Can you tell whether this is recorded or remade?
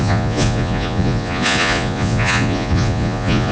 remade